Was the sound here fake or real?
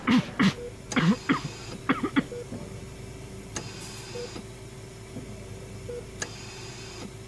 real